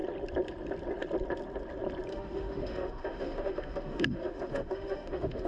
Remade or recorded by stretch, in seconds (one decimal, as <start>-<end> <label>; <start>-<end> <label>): 0.0-2.1 recorded; 2.1-5.5 remade

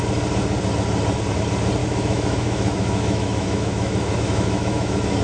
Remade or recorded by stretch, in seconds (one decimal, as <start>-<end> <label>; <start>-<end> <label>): 0.0-1.8 recorded; 1.8-5.2 remade

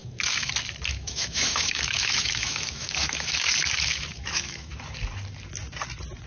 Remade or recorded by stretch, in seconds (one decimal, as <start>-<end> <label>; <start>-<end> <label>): 0.0-0.5 remade; 0.5-0.9 recorded; 0.9-4.7 remade; 4.7-6.3 recorded

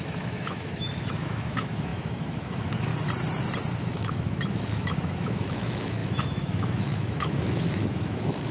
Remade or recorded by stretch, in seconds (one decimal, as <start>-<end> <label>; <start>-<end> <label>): 0.0-2.9 remade; 2.9-3.8 recorded; 3.8-8.5 remade